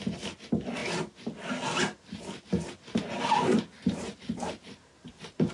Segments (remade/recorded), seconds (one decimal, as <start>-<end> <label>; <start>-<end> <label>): 0.0-3.7 recorded; 3.7-5.5 remade